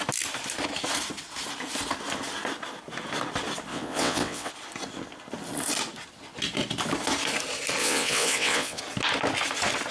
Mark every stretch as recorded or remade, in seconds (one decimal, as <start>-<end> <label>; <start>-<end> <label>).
0.0-3.7 recorded; 3.7-4.5 remade; 4.5-7.8 recorded; 7.8-8.8 remade; 8.8-9.9 recorded